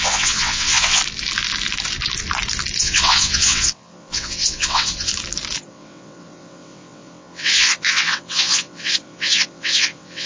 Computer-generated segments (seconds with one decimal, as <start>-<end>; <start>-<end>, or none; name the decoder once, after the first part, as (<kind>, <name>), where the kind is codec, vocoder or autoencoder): 0.0-1.0 (vocoder, WaveNeXt); 2.8-5.1; 5.7-10.3